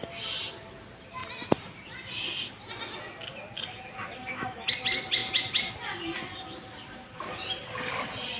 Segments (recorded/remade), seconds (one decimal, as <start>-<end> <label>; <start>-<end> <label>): 0.0-4.2 recorded; 4.2-4.7 remade; 4.7-8.4 recorded